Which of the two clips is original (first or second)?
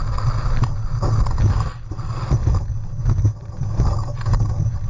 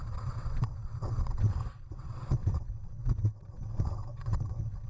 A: first